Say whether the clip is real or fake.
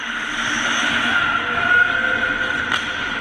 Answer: real